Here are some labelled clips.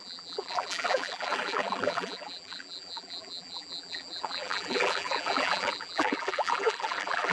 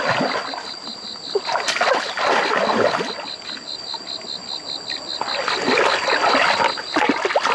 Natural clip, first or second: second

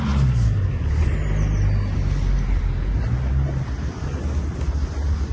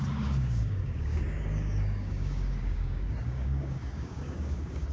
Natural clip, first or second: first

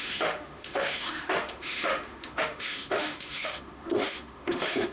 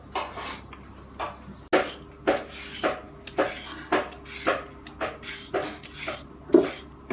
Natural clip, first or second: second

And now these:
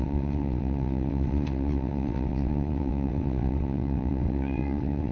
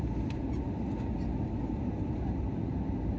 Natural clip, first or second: second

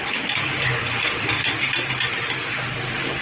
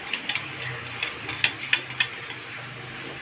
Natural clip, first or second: second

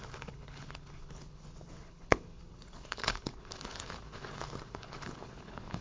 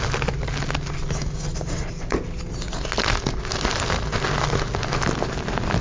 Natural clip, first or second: second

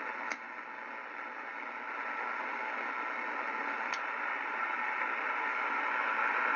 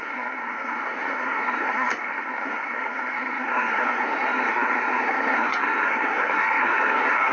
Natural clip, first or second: first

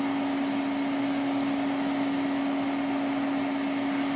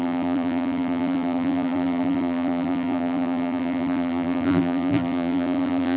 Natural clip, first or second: first